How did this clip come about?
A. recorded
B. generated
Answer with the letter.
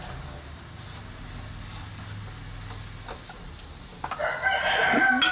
A